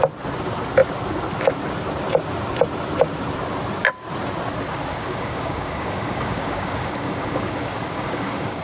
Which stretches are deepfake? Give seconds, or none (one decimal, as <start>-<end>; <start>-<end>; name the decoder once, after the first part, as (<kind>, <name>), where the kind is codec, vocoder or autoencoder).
4.9-8.6 (codec, DAC)